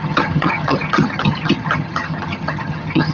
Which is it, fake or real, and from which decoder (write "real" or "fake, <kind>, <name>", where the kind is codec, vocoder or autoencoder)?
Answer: fake, vocoder, HiFi-GAN